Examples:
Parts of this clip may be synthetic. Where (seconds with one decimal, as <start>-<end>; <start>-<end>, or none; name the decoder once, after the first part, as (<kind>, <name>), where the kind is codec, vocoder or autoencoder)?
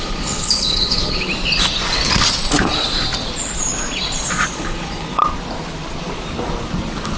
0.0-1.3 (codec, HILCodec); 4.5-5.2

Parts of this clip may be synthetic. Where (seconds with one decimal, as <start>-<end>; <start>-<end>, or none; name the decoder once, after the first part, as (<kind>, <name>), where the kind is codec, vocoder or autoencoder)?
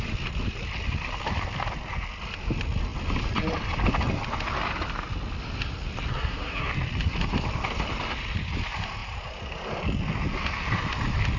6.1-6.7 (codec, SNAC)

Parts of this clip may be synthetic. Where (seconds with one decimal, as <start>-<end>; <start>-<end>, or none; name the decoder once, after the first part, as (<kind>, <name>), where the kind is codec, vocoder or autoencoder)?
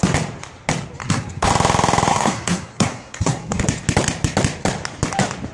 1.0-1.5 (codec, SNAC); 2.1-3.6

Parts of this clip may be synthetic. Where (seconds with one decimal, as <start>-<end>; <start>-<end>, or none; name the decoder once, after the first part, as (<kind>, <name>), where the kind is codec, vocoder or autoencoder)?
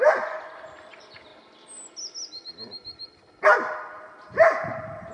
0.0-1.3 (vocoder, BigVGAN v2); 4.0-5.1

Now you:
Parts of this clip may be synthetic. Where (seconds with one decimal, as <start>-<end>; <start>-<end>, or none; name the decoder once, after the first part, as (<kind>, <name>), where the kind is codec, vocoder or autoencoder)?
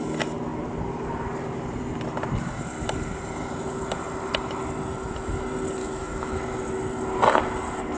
5.8-6.4 (autoencoder, DAC-VAE)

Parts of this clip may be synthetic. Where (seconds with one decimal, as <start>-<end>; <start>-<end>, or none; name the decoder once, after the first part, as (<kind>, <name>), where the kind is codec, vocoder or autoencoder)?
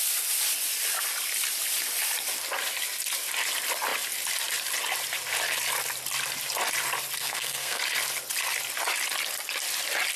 7.2-7.8 (codec, SNAC)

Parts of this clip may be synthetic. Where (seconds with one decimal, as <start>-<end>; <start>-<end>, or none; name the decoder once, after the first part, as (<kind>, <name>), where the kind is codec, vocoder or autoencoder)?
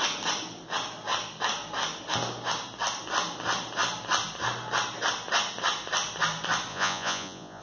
6.7-7.6 (vocoder, Vocos)